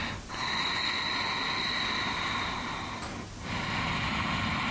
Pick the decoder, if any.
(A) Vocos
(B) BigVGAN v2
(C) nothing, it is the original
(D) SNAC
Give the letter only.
C